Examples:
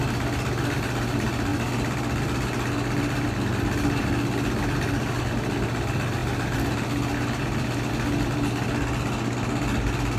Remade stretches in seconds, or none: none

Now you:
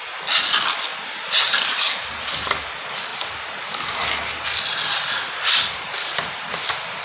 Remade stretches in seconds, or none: 0.9-2.4 (vocoder, BigVGAN v2)